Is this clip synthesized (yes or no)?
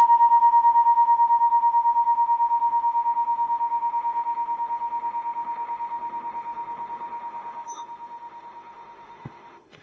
yes